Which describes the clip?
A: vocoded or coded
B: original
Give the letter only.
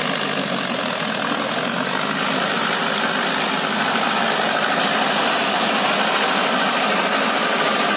B